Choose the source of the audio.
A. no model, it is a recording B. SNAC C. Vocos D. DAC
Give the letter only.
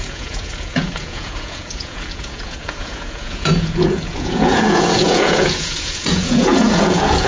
C